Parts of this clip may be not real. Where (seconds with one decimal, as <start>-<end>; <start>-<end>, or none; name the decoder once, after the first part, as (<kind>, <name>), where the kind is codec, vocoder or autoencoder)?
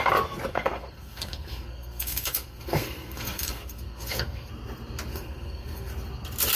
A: 0.5-4.5 (codec, SNAC); 5.1-5.9